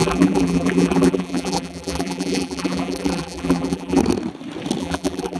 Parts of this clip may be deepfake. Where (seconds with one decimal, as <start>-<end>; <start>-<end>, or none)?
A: 0.0-4.0; 4.8-5.4